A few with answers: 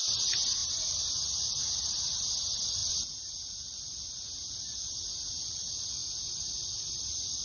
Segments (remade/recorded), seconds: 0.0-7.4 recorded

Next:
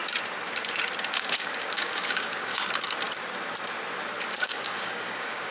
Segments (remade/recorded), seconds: 0.0-1.1 recorded; 1.1-2.5 remade; 2.5-4.4 recorded; 4.4-5.5 remade

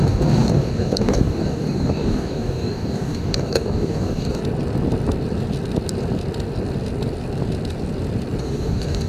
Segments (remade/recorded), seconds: 0.0-4.4 remade; 4.4-8.4 recorded; 8.4-9.1 remade

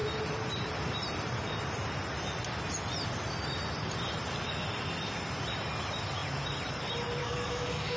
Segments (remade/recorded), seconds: 0.0-7.2 recorded; 7.2-8.0 remade